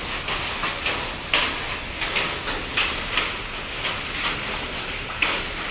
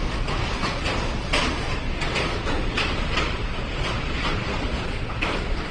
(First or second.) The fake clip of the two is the second